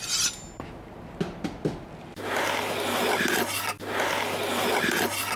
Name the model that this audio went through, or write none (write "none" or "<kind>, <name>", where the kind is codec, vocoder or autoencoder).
none